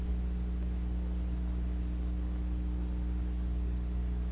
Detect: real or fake real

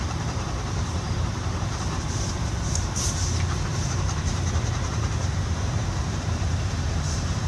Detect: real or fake fake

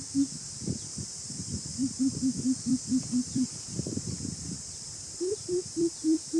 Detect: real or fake fake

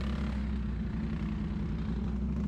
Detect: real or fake real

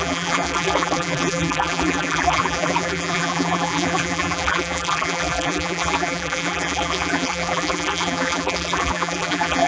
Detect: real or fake fake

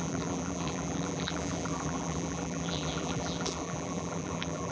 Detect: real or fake fake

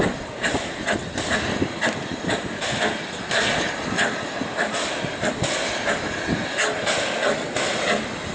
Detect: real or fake real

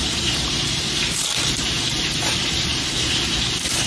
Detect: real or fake fake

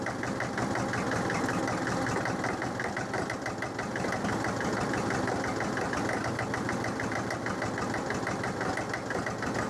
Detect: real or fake real